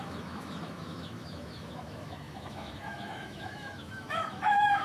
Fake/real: fake